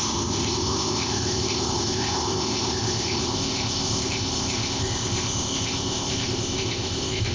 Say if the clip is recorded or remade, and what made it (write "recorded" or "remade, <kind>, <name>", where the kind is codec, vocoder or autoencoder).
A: remade, codec, ZipCodec